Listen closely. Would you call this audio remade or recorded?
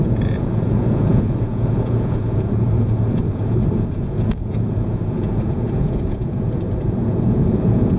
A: remade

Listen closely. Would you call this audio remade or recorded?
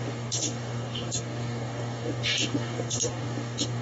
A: remade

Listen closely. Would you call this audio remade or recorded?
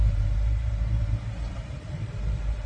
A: remade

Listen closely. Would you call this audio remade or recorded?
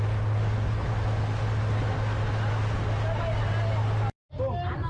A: recorded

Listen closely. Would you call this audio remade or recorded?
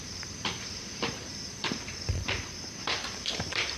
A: remade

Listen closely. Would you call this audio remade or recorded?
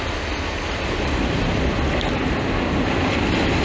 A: recorded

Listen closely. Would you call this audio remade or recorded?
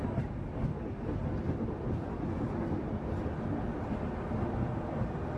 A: recorded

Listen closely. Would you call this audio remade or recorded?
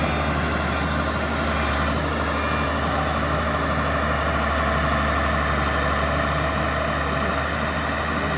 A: recorded